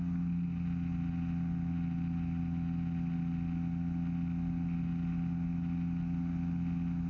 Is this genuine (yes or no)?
yes